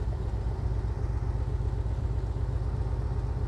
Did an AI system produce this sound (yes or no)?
no